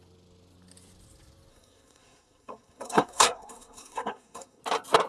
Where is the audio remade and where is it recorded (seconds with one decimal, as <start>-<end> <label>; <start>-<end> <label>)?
0.0-1.5 recorded; 1.5-4.6 remade; 4.6-5.1 recorded